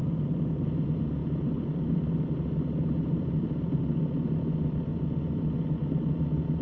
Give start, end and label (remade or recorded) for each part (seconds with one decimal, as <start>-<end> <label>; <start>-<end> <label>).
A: 0.0-1.2 recorded; 1.2-4.4 remade; 4.4-4.9 recorded; 4.9-5.4 remade; 5.4-6.6 recorded